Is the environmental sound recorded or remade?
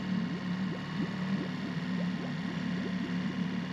recorded